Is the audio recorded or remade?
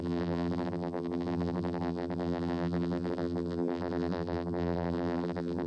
remade